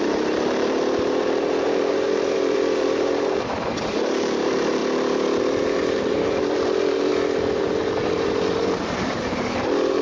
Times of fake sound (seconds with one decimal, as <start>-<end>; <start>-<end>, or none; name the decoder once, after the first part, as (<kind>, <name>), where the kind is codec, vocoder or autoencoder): 0.0-4.8 (vocoder, BigVGAN v2); 5.4-7.1; 7.6-10.0